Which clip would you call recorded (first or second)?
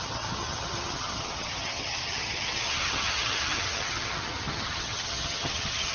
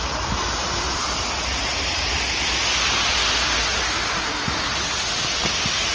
second